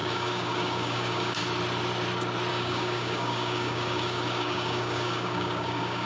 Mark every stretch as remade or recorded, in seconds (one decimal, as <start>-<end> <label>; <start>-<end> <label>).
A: 0.0-1.4 remade; 1.4-2.5 recorded; 2.5-6.1 remade